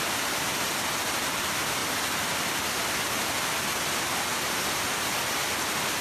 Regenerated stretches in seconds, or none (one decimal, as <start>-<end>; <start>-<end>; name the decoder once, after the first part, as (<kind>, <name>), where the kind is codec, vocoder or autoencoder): none